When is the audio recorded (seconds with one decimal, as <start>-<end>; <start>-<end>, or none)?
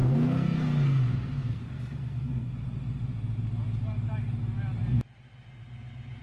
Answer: 2.5-6.2